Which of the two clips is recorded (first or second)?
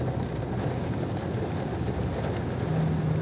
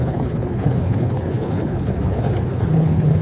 first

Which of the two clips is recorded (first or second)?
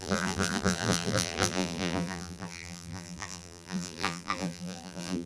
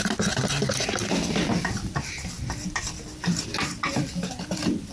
second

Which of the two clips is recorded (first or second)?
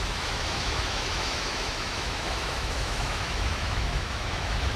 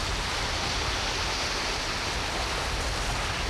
second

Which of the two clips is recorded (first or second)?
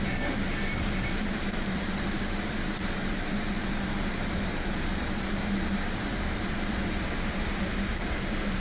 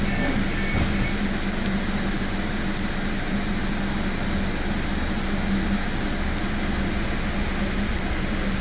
second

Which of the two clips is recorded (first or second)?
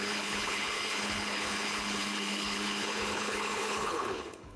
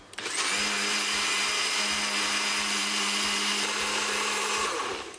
second